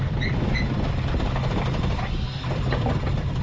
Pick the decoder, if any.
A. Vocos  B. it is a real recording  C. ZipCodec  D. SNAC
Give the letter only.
B